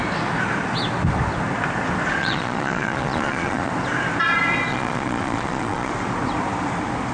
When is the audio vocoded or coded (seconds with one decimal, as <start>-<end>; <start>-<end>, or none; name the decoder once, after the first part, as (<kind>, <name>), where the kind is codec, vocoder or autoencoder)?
2.2-3.7 (vocoder, Vocos); 4.7-5.9